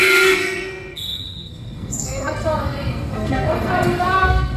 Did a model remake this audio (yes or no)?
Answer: yes